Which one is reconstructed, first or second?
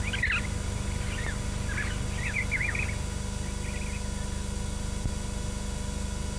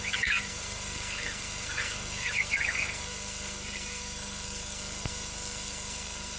second